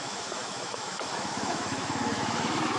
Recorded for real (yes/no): no